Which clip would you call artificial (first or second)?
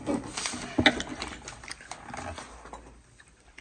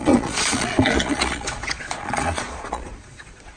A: second